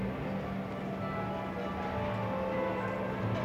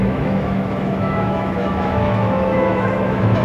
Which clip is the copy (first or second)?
second